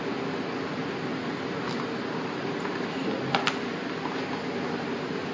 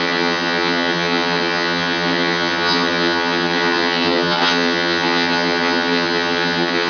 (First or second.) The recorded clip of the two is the first